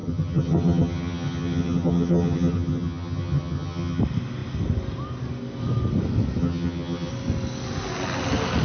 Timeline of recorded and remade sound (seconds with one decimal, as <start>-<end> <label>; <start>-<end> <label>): 0.0-4.0 remade; 4.0-6.4 recorded; 6.4-7.1 remade; 7.1-8.6 recorded